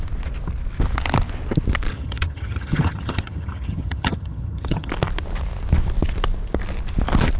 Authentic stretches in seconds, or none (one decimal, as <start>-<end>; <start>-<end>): 0.0-1.9; 4.9-7.4